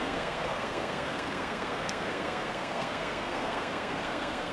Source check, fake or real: fake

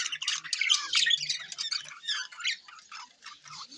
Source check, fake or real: real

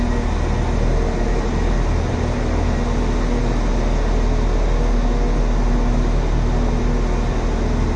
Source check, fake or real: real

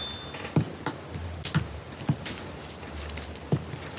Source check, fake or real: real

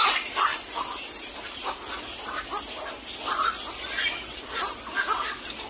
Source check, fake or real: real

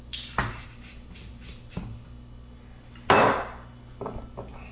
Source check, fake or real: real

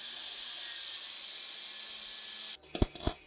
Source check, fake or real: real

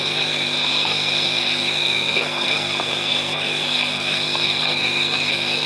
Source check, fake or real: fake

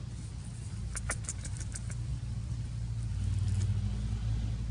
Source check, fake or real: real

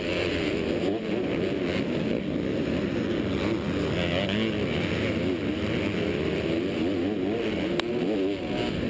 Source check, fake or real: real